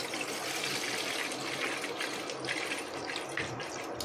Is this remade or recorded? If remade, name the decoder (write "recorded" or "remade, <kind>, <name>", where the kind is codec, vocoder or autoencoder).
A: recorded